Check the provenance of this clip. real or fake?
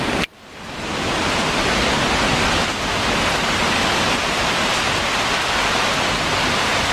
real